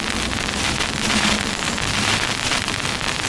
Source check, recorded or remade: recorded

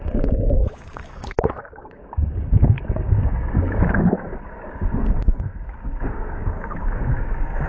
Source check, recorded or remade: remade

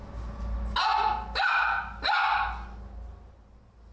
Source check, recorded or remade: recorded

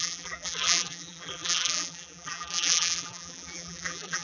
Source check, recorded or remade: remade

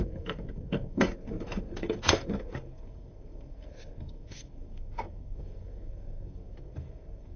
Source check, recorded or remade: remade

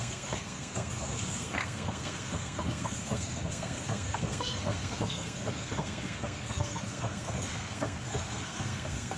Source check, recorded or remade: remade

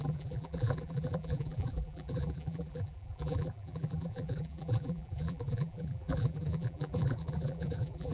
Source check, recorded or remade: remade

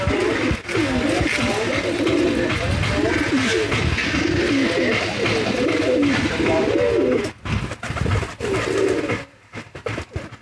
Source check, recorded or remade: recorded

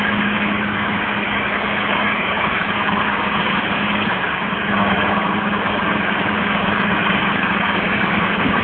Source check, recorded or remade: remade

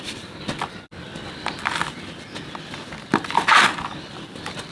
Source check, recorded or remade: recorded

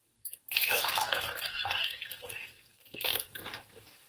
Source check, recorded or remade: remade